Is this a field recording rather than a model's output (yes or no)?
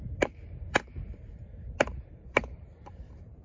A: no